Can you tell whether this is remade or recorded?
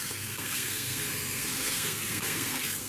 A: remade